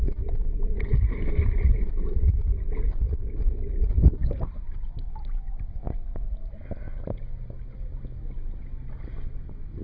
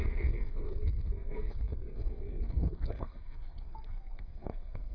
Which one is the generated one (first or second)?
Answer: second